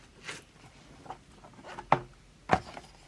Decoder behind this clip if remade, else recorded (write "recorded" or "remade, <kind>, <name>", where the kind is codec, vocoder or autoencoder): recorded